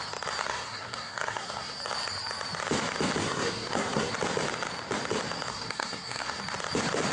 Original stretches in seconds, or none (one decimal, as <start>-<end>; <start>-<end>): 0.0-0.4; 1.8-3.2; 4.1-5.5; 6.4-7.1